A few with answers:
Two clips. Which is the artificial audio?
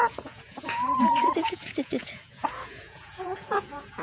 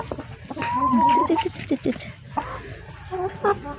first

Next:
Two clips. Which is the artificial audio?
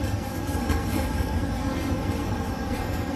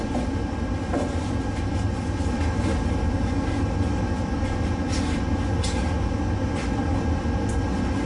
first